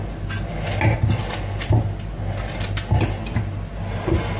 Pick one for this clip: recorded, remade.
recorded